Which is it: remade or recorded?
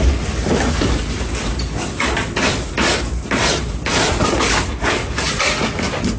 recorded